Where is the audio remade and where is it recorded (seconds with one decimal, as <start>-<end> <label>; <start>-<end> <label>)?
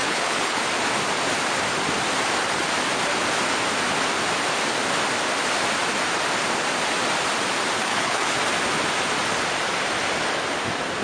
0.0-0.6 remade; 0.6-7.8 recorded; 7.8-8.4 remade; 8.4-11.0 recorded